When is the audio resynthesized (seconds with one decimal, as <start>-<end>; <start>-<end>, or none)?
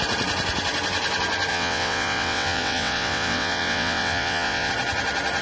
1.5-4.7